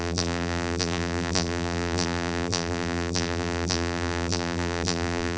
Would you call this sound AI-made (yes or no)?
yes